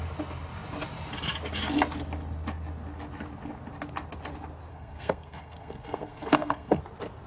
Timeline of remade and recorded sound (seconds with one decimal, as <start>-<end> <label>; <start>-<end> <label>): 0.0-4.7 recorded; 4.7-6.8 remade; 6.8-7.3 recorded